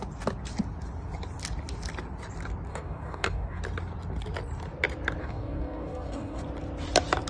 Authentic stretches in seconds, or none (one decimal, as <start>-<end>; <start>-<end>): 0.0-2.7; 3.6-5.2; 6.4-7.3